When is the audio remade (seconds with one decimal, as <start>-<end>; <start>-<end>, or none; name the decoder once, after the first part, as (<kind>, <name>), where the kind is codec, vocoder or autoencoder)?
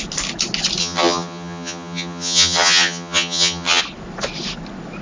0.8-3.8 (vocoder, HiFi-GAN)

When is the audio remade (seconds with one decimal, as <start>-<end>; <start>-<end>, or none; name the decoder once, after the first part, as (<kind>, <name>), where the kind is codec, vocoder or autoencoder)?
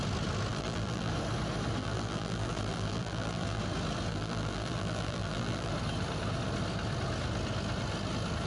0.5-1.1 (vocoder, BigVGAN v2); 1.8-3.6; 4.1-5.7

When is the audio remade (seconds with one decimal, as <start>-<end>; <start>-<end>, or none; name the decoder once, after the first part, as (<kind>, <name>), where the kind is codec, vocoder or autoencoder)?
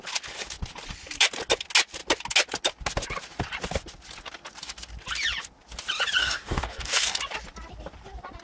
6.2-7.2 (codec, DAC)